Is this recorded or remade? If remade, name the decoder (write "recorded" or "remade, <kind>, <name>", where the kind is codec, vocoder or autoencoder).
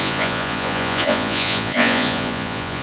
remade, vocoder, Vocos